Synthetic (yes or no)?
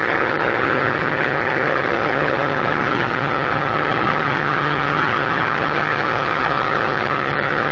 yes